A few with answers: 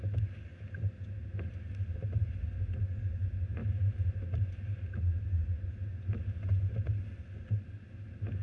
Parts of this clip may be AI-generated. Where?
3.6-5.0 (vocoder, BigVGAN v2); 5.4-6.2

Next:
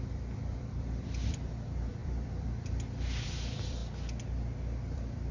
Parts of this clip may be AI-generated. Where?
0.0-3.8 (vocoder, BigVGAN v2); 4.8-5.3